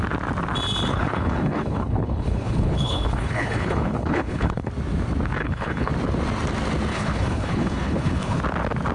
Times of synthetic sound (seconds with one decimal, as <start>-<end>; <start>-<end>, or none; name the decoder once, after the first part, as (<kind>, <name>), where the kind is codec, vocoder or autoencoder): 0.9-4.7 (codec, HILCodec); 5.4-5.9; 6.9-8.4